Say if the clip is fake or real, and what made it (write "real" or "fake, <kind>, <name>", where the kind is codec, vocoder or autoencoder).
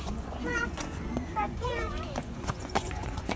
fake, vocoder, Vocos